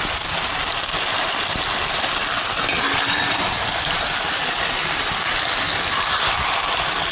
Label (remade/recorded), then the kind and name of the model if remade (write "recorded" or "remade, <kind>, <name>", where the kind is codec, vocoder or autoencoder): recorded